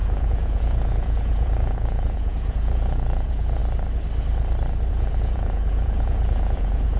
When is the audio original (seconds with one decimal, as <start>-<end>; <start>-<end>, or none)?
3.6-4.9